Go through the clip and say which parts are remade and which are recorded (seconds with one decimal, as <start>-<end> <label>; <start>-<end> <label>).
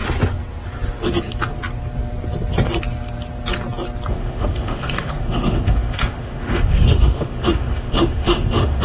0.0-4.1 recorded; 4.1-8.8 remade